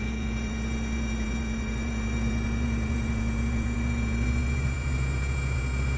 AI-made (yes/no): yes